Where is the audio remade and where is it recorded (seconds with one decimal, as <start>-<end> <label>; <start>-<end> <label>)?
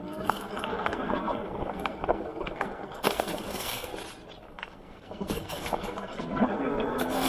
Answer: 0.0-3.9 remade; 3.9-4.5 recorded; 4.5-7.3 remade